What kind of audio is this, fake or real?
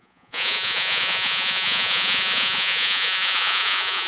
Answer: fake